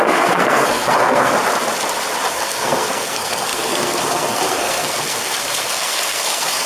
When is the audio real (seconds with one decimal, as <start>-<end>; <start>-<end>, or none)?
1.3-2.3